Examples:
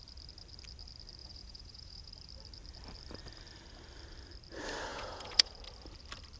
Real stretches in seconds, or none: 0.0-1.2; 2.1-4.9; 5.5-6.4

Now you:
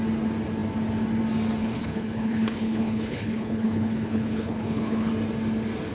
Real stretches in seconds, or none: 0.0-1.6; 5.1-5.9

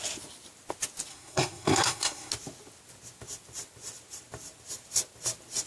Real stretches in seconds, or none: 0.0-1.1; 2.3-5.7